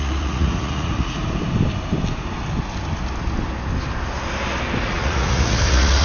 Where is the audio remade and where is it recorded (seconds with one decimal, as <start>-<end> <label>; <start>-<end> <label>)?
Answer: 0.0-1.2 remade; 1.2-4.8 recorded; 4.8-6.0 remade

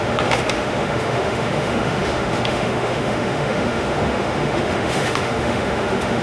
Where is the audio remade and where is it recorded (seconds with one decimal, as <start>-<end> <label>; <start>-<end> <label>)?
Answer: 0.0-6.2 remade

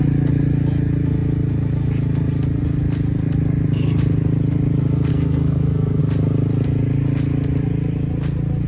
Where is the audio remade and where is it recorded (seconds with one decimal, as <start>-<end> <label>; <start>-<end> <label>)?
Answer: 0.0-5.1 recorded; 5.1-6.0 remade; 6.0-8.7 recorded

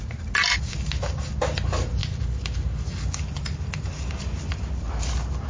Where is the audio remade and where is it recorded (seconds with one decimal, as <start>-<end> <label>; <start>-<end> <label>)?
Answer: 0.0-5.5 recorded

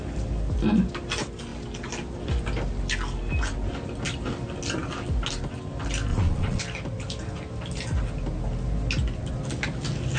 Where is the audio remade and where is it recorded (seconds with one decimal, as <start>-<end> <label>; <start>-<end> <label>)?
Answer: 0.0-6.1 recorded; 6.1-6.6 remade; 6.6-10.2 recorded

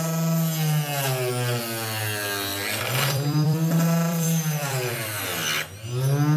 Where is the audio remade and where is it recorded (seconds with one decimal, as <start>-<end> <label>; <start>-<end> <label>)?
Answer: 0.0-2.5 recorded; 2.5-5.2 remade; 5.2-6.4 recorded

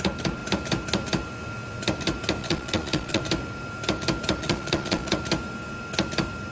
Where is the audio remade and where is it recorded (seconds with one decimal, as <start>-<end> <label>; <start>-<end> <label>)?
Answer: 0.0-2.4 recorded; 2.4-3.2 remade; 3.2-4.4 recorded; 4.4-5.1 remade; 5.1-6.5 recorded

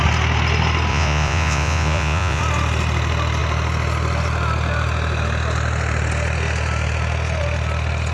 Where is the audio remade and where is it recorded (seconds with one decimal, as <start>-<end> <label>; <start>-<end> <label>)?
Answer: 0.0-0.9 recorded; 0.9-2.4 remade; 2.4-8.1 recorded